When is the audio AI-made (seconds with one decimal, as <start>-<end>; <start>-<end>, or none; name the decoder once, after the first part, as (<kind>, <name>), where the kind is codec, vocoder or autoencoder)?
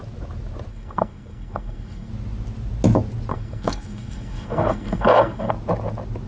0.7-2.1 (codec, SNAC); 3.3-5.5